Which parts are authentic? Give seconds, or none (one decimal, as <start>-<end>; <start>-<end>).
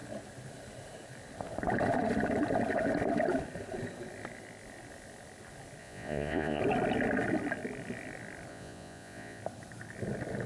0.0-5.8; 6.6-8.5; 9.4-10.5